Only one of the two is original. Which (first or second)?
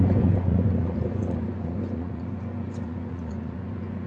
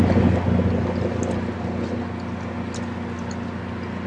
second